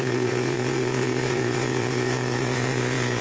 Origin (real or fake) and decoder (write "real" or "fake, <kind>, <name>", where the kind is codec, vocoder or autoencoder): fake, vocoder, Vocos